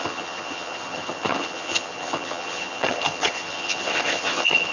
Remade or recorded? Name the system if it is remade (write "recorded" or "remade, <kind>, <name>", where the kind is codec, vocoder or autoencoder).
remade, vocoder, HiFi-GAN